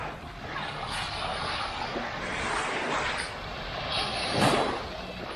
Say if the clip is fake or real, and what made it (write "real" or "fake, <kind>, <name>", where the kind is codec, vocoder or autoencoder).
real